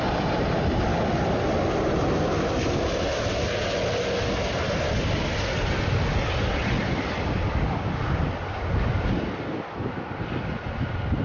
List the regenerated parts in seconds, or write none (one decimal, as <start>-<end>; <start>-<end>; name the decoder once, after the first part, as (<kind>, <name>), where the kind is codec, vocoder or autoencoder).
none